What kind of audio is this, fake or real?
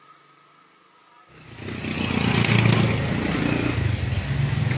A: real